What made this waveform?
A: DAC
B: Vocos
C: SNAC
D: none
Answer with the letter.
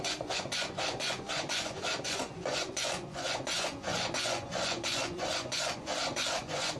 B